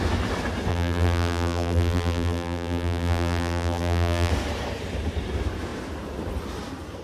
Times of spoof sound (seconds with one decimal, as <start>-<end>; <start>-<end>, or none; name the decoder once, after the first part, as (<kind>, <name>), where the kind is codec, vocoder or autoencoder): 0.7-4.3 (vocoder, BigVGAN v2)